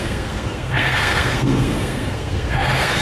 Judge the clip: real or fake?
fake